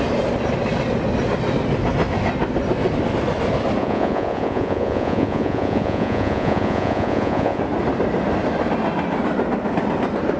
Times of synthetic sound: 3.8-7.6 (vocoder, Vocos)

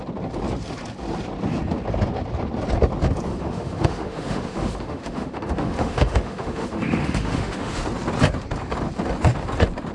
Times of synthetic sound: 3.3-7.8 (autoencoder, DAC-VAE)